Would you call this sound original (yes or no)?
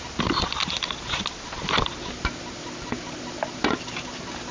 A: yes